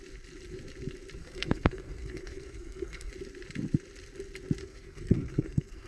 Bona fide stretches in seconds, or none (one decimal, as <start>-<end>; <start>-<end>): 0.0-1.2; 3.1-4.6